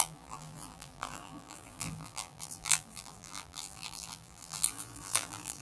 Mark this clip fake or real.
fake